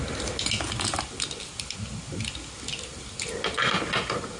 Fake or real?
real